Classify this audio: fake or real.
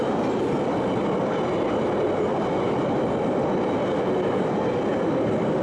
real